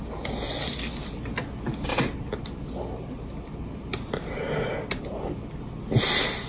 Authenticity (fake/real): real